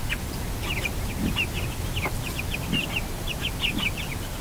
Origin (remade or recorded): recorded